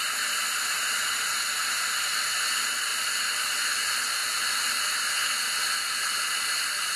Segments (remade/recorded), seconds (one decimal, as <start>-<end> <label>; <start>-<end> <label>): 0.0-7.0 recorded